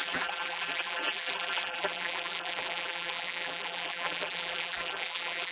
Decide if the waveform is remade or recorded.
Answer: remade